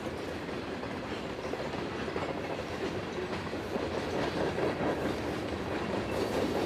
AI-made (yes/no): yes